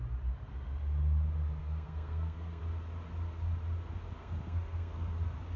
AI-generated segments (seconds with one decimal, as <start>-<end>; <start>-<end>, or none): 1.6-2.6; 4.2-5.1